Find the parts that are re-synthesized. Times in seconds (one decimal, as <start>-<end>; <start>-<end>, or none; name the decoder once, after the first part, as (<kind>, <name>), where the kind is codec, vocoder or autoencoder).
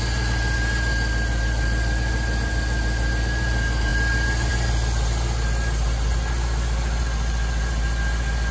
none